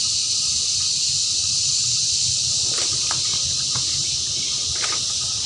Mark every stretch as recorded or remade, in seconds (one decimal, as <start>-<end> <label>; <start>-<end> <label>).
0.0-5.5 recorded